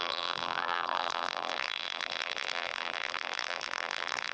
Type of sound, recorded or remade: remade